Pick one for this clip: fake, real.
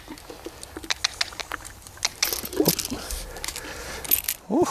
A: real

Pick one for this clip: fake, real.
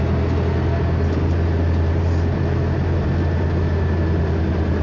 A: real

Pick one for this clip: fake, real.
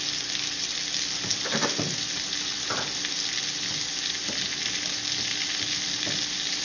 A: real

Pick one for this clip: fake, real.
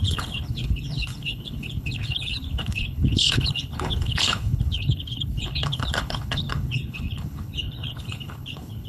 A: fake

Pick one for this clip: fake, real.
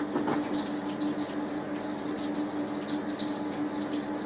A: real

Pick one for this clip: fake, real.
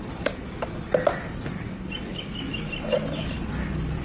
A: real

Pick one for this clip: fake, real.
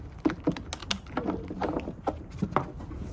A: real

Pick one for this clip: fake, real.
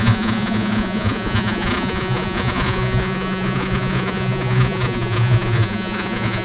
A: fake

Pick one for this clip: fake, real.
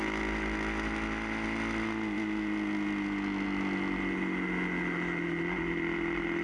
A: real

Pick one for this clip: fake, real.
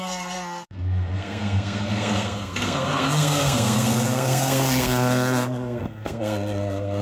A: fake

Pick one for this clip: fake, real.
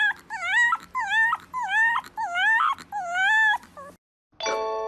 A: real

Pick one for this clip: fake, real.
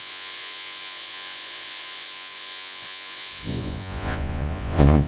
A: fake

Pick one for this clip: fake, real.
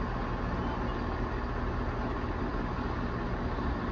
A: real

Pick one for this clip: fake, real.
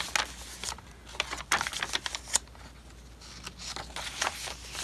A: real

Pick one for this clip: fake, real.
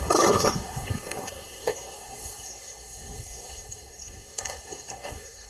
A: fake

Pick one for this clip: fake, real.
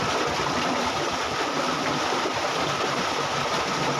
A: real